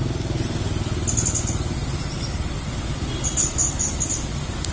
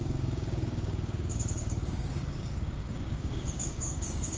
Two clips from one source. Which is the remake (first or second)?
second